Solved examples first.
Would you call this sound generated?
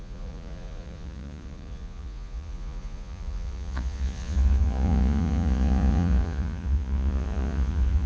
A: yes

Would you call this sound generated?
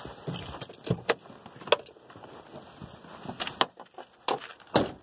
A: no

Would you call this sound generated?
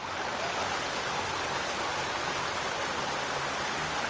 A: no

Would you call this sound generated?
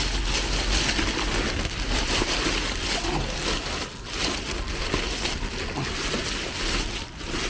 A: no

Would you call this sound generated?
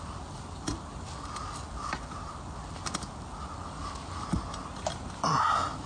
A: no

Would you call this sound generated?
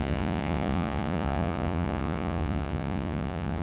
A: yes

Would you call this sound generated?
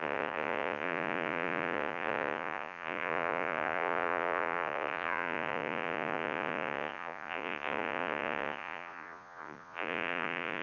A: yes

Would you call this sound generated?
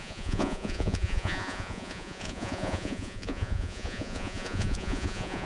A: yes